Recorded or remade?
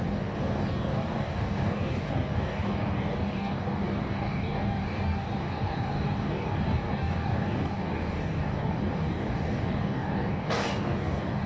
remade